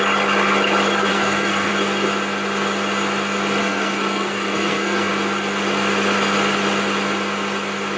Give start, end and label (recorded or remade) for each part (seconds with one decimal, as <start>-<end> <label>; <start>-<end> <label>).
0.0-1.1 recorded; 1.1-1.7 remade; 1.7-3.6 recorded; 3.6-5.1 remade; 5.1-8.0 recorded

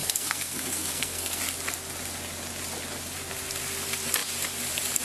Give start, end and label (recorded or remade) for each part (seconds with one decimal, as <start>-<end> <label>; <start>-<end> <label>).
0.0-1.4 remade; 1.4-5.0 recorded

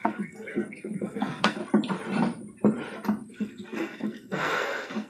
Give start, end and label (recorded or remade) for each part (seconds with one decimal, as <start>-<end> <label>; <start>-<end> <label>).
0.0-1.6 remade; 1.6-3.3 recorded; 3.3-5.1 remade

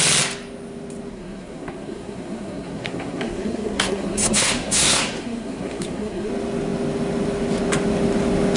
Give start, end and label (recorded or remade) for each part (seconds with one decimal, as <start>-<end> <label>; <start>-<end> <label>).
0.0-1.1 recorded; 1.1-6.3 remade; 6.3-8.6 recorded